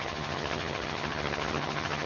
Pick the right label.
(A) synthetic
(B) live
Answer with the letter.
A